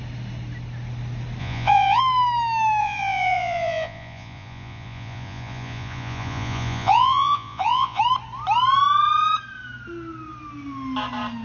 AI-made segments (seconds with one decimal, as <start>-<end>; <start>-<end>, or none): 1.4-2.0; 2.8-8.0